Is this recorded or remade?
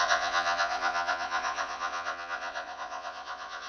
remade